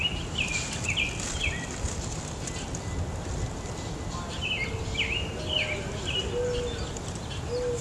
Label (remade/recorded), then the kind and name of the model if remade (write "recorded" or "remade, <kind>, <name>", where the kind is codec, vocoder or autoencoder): recorded